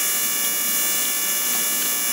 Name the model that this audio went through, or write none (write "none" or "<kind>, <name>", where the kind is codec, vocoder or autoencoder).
none